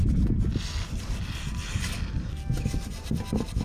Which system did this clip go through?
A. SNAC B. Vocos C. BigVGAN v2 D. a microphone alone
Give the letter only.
D